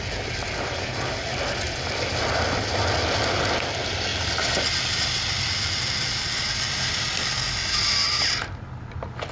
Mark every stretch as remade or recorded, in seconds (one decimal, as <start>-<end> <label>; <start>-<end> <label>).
0.0-9.3 recorded